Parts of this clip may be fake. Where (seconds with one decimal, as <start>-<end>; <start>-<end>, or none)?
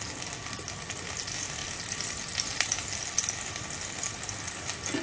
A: none